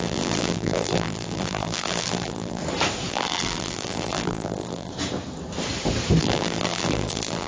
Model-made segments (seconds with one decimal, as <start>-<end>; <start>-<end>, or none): 0.0-2.6; 3.1-4.9; 6.2-7.5